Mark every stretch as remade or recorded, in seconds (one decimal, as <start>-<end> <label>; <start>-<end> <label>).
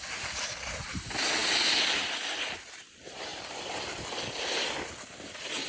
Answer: 0.0-5.7 recorded